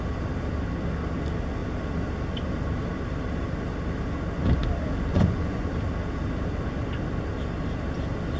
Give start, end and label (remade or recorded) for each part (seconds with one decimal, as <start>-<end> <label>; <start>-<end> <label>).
0.0-5.1 recorded; 5.1-5.7 remade; 5.7-8.4 recorded